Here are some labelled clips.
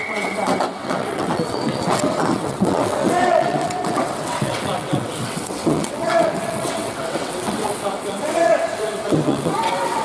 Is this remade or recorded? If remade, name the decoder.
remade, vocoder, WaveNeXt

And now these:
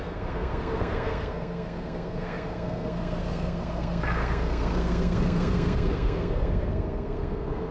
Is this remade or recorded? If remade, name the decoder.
remade, codec, SNAC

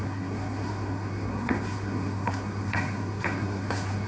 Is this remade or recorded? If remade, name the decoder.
remade, codec, SNAC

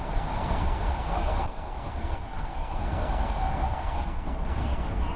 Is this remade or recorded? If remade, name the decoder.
remade, codec, SNAC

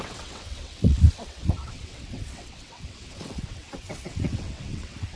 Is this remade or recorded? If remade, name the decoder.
remade, vocoder, WaveNeXt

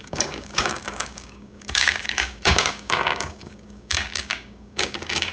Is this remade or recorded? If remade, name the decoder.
remade, codec, DAC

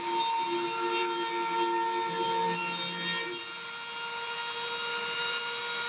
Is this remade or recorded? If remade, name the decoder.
recorded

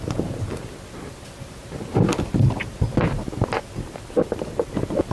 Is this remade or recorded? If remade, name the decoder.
recorded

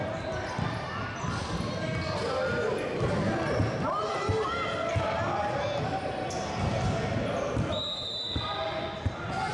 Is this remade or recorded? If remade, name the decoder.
recorded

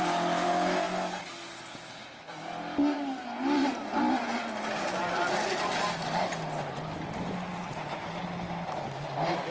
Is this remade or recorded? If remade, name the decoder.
recorded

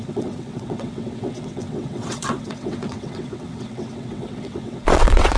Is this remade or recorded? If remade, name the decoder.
remade, vocoder, WaveNeXt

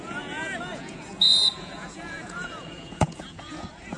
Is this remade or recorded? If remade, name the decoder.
remade, vocoder, Vocos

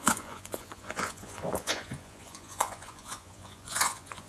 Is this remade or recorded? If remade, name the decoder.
remade, vocoder, Vocos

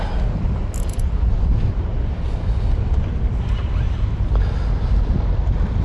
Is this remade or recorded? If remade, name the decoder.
recorded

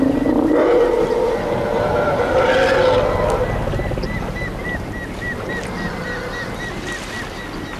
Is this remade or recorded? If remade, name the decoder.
recorded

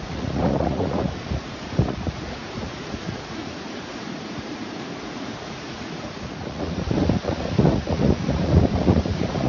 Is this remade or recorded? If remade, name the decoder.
remade, vocoder, Vocos